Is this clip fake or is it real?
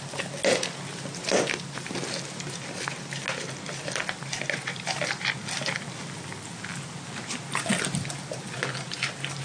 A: real